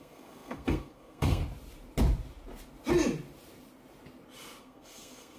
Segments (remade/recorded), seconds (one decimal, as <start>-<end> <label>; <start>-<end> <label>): 0.0-1.4 remade; 1.4-4.6 recorded; 4.6-5.4 remade